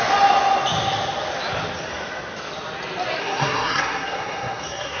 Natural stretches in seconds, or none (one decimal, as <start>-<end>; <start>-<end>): 0.0-3.2